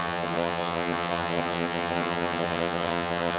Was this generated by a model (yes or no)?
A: yes